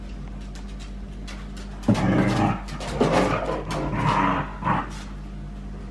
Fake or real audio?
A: real